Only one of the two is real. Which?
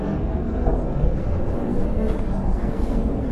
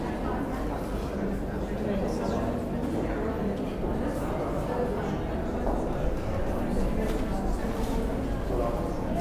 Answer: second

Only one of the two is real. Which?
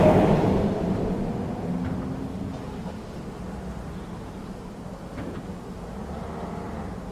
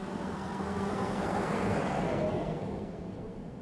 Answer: first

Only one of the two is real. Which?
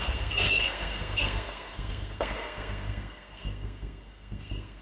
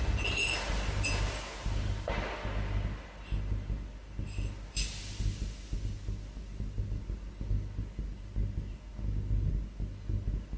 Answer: second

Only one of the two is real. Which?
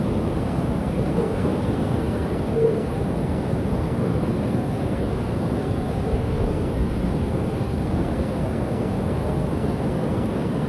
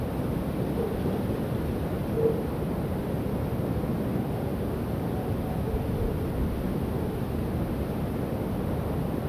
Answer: second